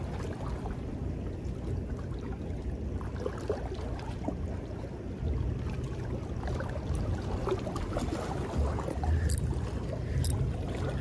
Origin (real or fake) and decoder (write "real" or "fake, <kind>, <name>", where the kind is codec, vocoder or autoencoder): real